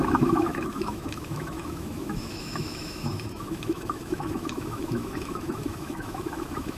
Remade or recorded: remade